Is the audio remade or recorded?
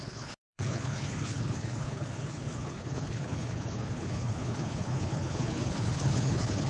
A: remade